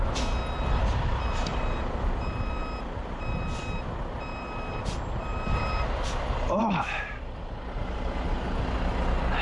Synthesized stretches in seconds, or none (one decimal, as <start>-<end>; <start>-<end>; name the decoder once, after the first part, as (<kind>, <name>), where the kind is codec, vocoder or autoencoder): 1.5-2.6 (vocoder, BigVGAN v2); 5.3-6.6